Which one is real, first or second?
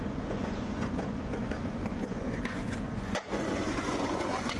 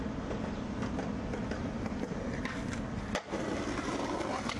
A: second